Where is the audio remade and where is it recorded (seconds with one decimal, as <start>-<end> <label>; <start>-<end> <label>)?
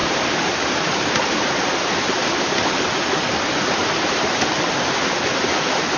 0.0-1.5 remade; 1.5-3.8 recorded; 3.8-4.4 remade; 4.4-6.0 recorded